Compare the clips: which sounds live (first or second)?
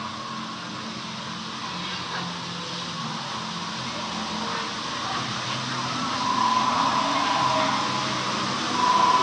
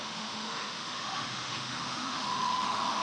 first